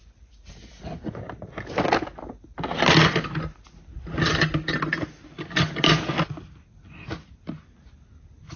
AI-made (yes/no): no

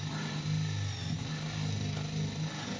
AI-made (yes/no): no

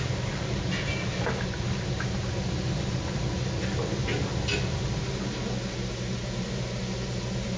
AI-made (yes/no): no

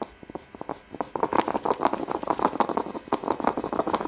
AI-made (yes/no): yes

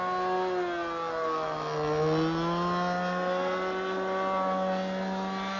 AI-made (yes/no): no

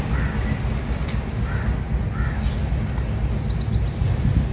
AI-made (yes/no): no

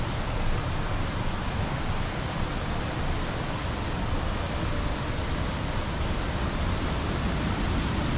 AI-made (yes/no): no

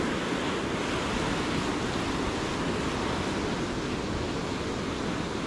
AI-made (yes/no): no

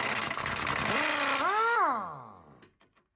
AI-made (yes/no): no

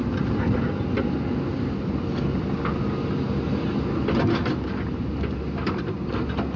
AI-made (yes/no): no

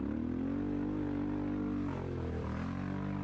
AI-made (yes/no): yes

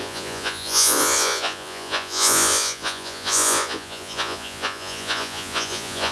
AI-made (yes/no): yes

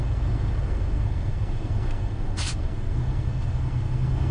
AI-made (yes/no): yes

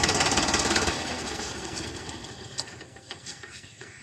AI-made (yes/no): yes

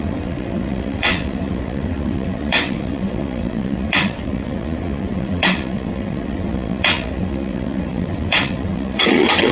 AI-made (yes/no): yes